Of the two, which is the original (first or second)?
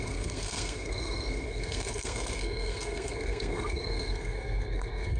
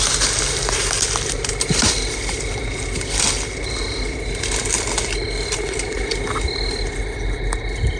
second